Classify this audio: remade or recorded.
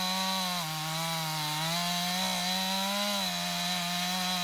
recorded